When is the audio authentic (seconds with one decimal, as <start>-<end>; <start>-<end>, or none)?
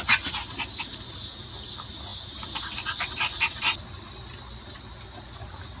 0.0-5.8